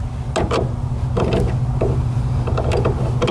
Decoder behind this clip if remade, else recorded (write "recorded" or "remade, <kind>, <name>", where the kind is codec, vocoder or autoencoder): recorded